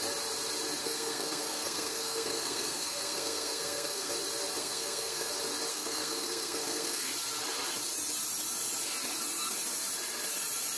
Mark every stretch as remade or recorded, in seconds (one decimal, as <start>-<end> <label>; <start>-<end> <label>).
0.0-0.8 recorded; 0.8-4.1 remade; 4.1-4.6 recorded; 4.6-5.3 remade; 5.3-5.7 recorded; 5.7-7.1 remade; 7.1-10.8 recorded